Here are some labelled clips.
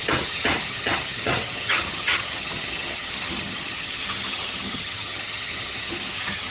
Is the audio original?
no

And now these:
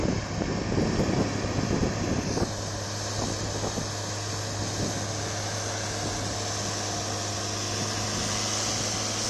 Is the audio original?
yes